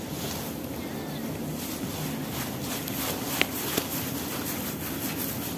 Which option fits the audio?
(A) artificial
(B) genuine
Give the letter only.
B